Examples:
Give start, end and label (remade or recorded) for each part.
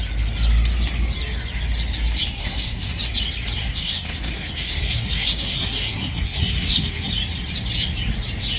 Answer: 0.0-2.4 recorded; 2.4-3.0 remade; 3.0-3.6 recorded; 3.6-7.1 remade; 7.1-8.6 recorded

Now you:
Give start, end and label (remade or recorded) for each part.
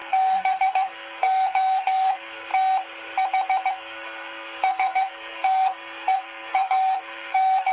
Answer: 0.0-2.5 remade; 2.5-3.7 recorded; 3.7-7.7 remade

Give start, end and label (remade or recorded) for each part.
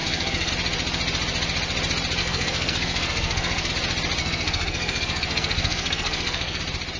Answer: 0.0-0.5 remade; 0.5-2.2 recorded; 2.2-3.7 remade; 3.7-4.2 recorded; 4.2-6.6 remade; 6.6-7.0 recorded